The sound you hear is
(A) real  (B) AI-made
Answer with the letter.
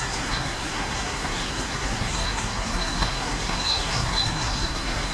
B